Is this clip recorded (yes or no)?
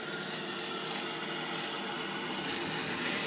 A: yes